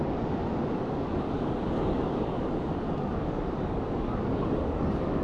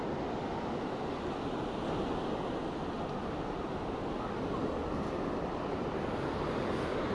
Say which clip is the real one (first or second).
second